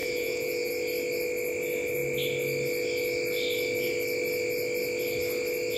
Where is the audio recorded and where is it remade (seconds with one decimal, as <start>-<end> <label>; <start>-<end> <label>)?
0.0-0.7 remade; 0.7-5.8 recorded